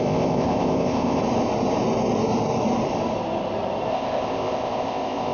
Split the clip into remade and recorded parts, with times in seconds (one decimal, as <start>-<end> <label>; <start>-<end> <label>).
0.0-1.2 remade; 1.2-3.9 recorded; 3.9-5.3 remade